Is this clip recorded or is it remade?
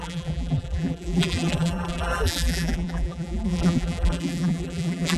remade